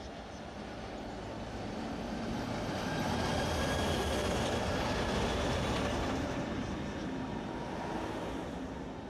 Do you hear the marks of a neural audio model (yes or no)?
no